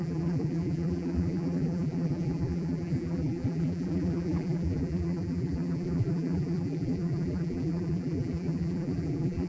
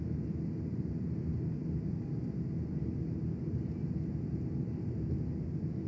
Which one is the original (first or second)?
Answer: second